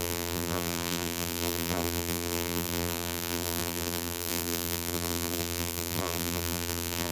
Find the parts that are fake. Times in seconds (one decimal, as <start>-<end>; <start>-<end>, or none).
0.0-7.1